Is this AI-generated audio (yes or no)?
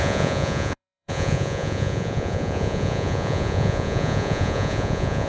yes